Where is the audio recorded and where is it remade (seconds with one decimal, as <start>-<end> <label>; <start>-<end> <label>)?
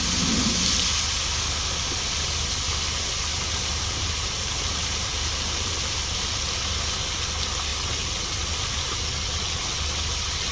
0.0-3.3 recorded; 3.3-5.9 remade; 5.9-10.5 recorded